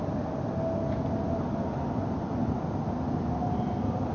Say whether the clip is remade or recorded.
recorded